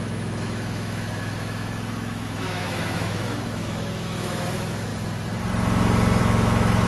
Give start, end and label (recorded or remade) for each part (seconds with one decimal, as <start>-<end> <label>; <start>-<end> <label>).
0.0-4.9 remade; 4.9-6.2 recorded; 6.2-6.9 remade